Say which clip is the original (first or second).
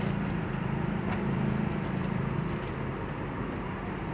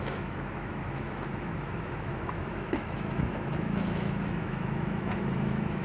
first